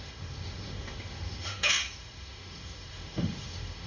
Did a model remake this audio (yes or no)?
yes